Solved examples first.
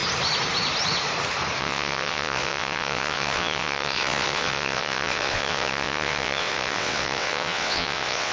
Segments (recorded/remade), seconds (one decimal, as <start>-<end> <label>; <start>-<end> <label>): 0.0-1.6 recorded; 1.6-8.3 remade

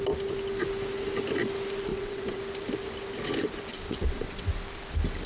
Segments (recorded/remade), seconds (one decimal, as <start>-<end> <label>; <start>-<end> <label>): 0.0-1.9 recorded; 1.9-2.4 remade; 2.4-3.7 recorded; 3.7-4.5 remade; 4.5-5.3 recorded

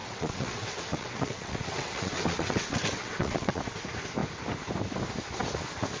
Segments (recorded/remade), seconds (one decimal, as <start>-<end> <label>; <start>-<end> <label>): 0.0-3.6 remade; 3.6-6.0 recorded

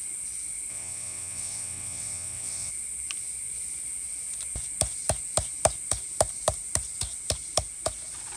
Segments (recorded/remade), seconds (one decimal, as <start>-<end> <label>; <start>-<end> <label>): 0.0-0.7 recorded; 0.7-2.7 remade; 2.7-8.4 recorded